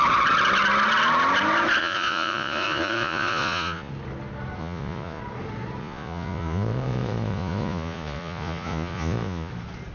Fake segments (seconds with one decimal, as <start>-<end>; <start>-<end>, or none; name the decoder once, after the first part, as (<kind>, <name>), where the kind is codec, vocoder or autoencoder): 1.8-3.9 (vocoder, Vocos); 4.6-5.2; 5.8-9.5